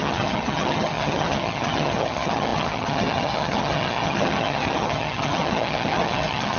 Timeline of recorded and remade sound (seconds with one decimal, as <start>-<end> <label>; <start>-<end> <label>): 0.0-6.6 remade